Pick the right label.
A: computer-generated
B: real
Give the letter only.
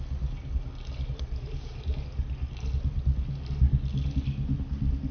B